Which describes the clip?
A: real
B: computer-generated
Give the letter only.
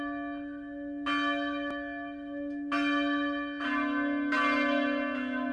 A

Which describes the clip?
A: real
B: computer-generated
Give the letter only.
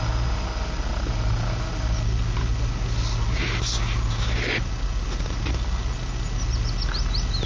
A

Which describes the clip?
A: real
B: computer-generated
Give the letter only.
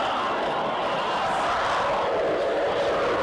A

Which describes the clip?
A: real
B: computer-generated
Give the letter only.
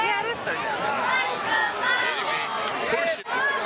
A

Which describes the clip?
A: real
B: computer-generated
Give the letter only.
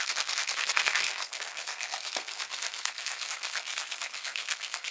B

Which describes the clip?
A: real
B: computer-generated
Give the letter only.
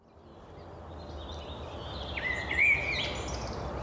A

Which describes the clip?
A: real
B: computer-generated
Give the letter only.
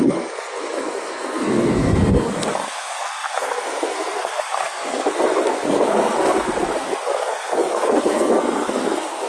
B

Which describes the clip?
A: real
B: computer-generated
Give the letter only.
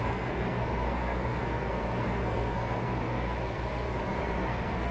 B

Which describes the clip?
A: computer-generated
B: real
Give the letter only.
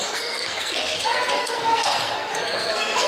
A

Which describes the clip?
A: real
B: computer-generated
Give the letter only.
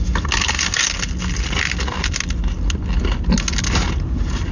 A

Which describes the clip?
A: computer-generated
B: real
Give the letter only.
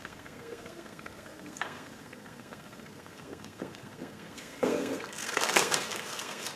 A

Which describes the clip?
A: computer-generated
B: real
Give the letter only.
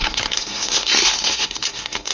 A